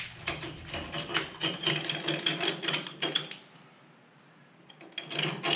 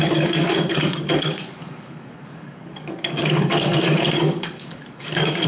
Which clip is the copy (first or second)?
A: second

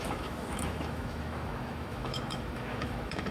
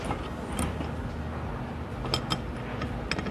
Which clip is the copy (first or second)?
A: first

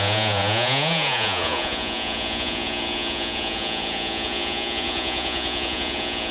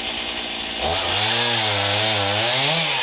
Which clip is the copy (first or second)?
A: first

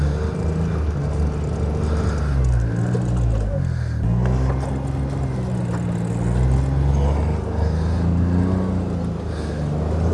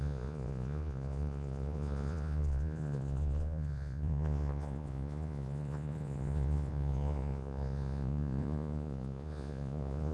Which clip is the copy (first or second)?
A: second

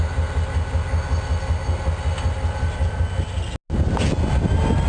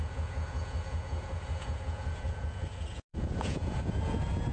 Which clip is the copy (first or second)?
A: second